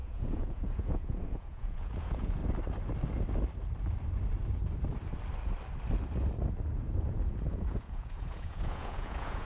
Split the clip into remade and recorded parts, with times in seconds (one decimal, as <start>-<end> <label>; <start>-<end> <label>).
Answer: 0.0-2.4 remade; 2.4-6.8 recorded; 6.8-9.4 remade